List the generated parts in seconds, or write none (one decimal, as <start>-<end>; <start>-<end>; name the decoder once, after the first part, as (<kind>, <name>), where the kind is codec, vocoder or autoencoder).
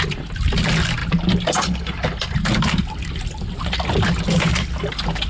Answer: none